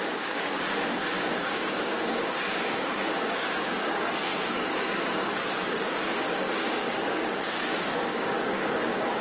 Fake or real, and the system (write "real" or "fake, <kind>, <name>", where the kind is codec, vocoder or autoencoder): fake, codec, DAC